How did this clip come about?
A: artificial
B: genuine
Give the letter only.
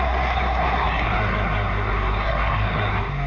A